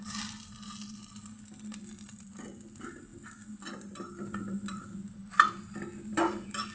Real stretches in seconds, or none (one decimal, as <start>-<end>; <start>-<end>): 0.0-6.7